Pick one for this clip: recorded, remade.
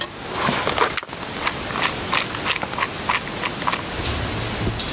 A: recorded